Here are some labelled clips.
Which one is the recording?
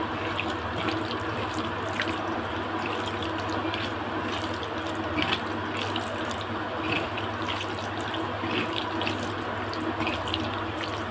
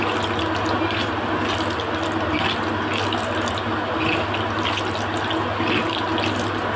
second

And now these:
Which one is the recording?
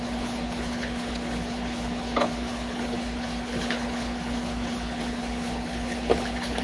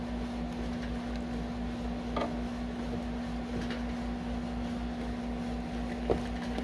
second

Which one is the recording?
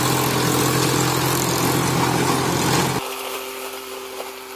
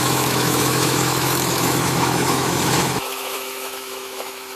first